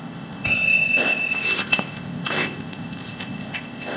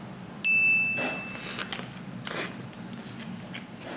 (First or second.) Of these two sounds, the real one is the second